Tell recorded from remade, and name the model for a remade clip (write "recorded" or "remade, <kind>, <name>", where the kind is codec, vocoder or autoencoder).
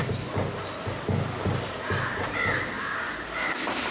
recorded